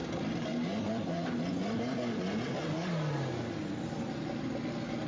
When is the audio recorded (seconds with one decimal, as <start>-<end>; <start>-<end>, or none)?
0.0-5.1